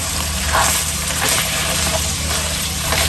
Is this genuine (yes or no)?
no